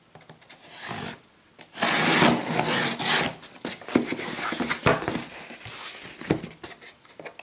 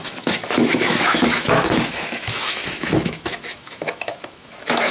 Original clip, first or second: first